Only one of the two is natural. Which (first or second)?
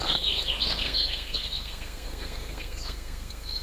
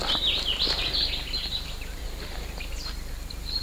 second